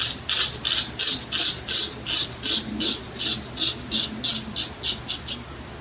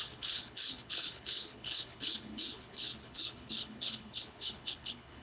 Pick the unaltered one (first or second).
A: first